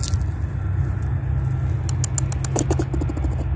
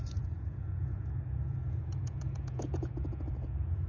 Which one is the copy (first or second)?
second